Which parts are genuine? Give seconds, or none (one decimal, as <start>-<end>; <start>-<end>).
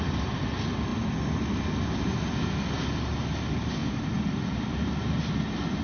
0.0-5.8